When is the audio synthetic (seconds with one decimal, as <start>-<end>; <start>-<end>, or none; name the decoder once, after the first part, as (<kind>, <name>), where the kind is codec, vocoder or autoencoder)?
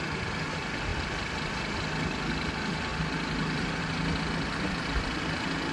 none